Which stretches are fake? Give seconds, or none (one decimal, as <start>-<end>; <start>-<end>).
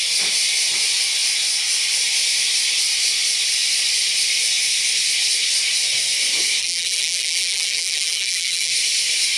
6.6-8.7